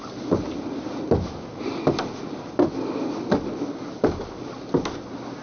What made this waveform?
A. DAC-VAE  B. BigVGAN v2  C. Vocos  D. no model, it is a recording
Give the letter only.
D